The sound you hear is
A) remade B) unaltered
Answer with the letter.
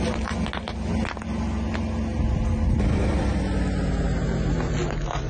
B